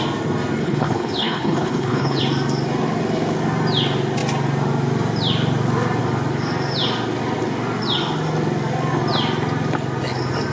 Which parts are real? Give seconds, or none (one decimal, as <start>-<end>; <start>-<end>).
0.0-0.6; 2.2-10.5